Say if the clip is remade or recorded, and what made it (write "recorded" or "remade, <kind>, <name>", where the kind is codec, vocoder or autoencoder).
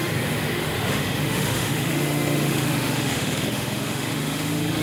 remade, autoencoder, DAC-VAE